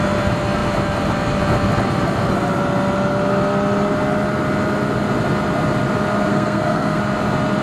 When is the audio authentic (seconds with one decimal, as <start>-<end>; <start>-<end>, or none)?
0.0-6.3; 7.0-7.6